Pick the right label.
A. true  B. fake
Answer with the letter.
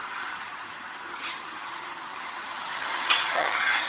B